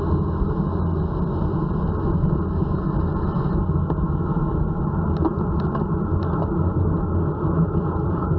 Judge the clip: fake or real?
real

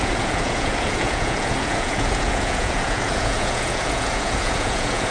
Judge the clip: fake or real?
fake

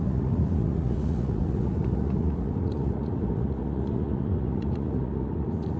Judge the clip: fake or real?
fake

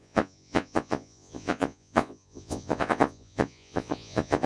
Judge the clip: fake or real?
fake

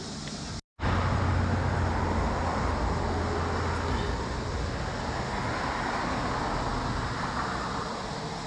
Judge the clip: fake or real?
real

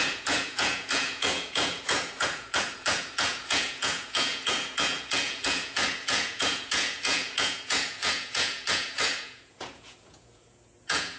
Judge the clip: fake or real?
fake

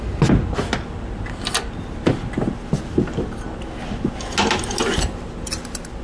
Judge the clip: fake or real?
real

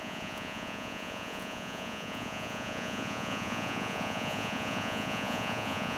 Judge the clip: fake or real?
fake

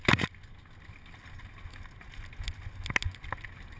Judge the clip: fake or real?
real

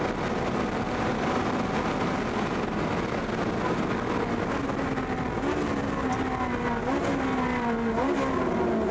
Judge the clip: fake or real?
real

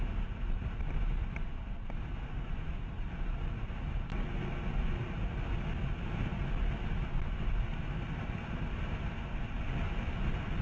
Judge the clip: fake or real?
real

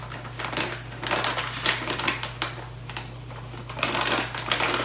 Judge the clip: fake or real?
real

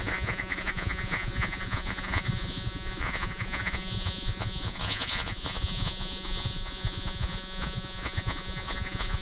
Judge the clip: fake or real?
fake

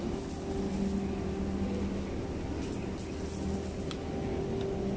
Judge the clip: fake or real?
real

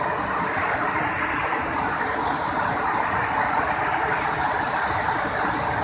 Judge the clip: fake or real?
real